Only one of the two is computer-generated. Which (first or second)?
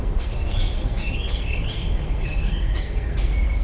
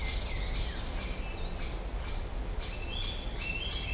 first